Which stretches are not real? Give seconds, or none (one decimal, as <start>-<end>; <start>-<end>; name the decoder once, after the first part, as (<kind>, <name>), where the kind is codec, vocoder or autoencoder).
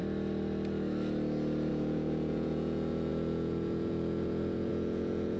1.7-5.4 (vocoder, Vocos)